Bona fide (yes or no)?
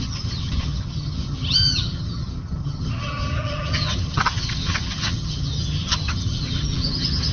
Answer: no